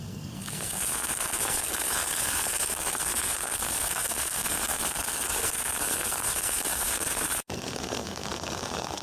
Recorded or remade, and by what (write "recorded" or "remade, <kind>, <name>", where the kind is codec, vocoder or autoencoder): remade, codec, SNAC